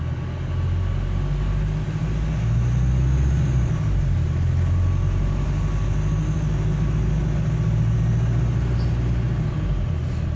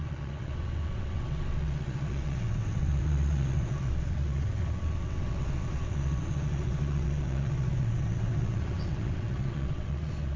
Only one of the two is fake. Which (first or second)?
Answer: second